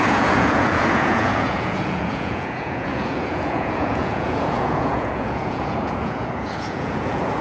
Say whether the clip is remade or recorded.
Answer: remade